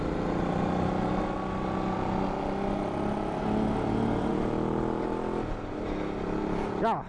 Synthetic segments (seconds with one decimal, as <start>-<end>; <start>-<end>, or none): none